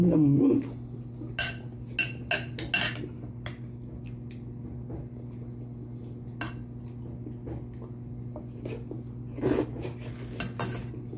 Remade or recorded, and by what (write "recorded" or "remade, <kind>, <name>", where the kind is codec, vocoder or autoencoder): recorded